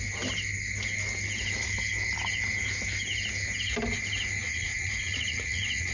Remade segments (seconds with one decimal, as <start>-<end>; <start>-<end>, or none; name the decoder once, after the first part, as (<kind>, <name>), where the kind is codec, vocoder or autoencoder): 4.4-5.9 (vocoder, Vocos)